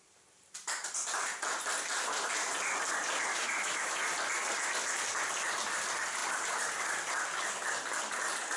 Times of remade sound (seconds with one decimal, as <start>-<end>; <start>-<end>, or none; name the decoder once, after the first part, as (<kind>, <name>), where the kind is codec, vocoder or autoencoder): 3.3-4.0 (autoencoder, DAC-VAE)